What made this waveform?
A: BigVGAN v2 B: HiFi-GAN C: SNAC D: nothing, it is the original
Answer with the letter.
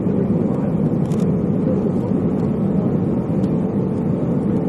D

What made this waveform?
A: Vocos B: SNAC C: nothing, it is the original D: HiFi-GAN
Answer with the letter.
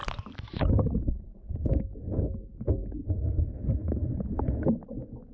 C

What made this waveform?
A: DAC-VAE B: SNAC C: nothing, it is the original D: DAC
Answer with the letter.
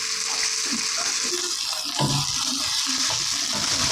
C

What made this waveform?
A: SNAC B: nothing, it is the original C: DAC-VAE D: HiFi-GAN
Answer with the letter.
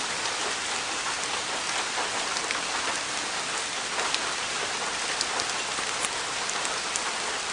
B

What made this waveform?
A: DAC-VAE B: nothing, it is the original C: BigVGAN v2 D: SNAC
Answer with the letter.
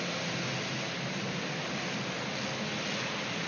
B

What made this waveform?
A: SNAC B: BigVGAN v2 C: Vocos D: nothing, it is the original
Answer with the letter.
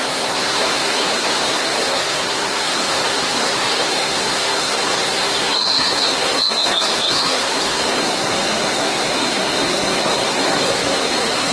A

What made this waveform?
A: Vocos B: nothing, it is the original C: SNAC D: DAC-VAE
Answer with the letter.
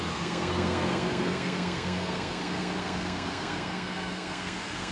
C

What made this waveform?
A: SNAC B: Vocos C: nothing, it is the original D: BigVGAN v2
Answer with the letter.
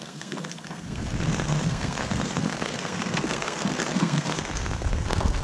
A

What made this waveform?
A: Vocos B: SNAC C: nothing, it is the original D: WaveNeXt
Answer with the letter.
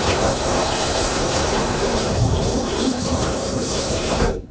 B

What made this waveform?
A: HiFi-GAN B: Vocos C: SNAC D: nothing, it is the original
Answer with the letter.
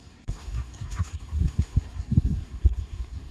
C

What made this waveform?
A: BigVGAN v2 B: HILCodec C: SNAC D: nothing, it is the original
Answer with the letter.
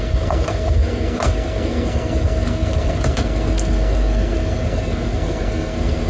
C